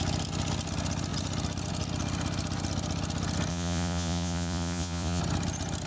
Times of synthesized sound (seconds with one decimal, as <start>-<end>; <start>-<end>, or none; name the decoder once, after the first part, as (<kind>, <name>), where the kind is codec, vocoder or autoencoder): 3.5-5.2 (vocoder, Vocos)